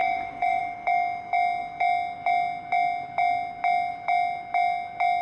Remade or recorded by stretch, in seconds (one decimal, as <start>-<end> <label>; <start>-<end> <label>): 0.0-0.6 remade; 0.6-5.2 recorded

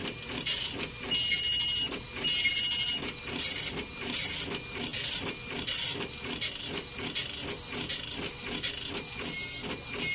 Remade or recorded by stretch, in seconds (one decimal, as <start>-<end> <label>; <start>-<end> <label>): 0.0-10.1 recorded

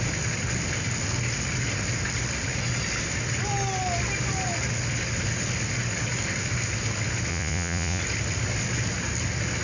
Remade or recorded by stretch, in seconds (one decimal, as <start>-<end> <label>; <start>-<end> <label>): 0.0-7.3 recorded; 7.3-8.0 remade; 8.0-9.6 recorded

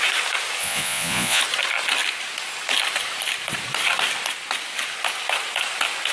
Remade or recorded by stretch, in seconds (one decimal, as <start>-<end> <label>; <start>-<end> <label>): 0.0-0.6 recorded; 0.6-1.4 remade; 1.4-6.1 recorded

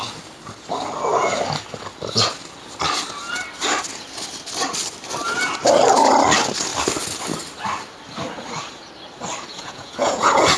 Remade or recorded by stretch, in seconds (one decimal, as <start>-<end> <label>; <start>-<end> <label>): 0.0-9.5 recorded; 9.5-10.6 remade